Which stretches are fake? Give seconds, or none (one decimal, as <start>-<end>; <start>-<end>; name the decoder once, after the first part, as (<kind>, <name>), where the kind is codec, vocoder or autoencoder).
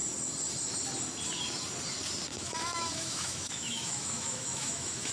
2.3-5.1 (autoencoder, DAC-VAE)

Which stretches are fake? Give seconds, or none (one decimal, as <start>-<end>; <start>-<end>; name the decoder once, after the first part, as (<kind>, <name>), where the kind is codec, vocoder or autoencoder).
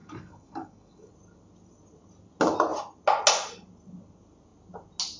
0.0-1.1 (codec, DAC)